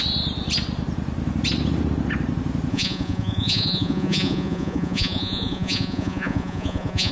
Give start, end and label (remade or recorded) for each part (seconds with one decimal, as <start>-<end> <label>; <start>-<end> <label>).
0.0-2.7 recorded; 2.7-7.1 remade